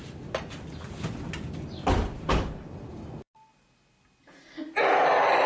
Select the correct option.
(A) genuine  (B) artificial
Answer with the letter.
A